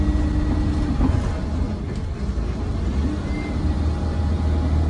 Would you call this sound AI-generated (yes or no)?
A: no